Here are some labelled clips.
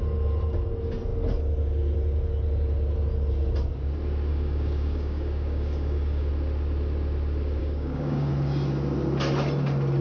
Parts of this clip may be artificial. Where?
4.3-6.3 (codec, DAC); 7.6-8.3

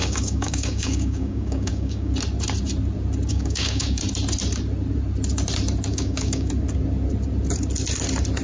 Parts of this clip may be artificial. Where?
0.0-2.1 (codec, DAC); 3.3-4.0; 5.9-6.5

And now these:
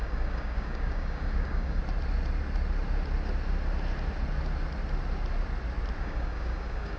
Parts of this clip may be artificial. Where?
0.0-1.8 (codec, DAC); 6.0-7.0

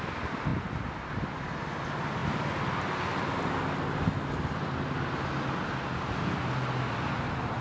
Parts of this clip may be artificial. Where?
none

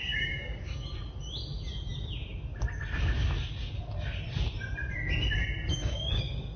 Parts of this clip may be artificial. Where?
0.0-0.7 (codec, DAC); 5.7-6.6